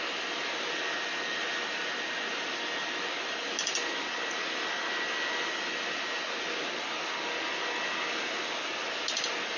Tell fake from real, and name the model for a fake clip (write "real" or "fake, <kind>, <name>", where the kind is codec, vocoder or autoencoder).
real